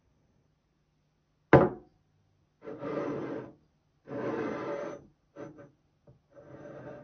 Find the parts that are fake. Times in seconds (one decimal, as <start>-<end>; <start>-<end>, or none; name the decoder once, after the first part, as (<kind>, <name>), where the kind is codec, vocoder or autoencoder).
none